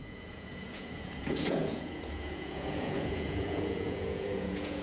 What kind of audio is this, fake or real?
fake